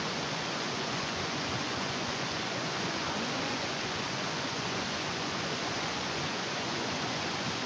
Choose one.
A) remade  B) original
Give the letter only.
A